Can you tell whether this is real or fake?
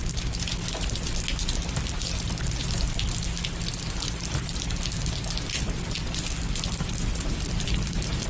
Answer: real